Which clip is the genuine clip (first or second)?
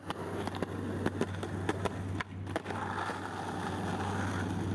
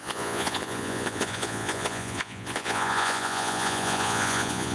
first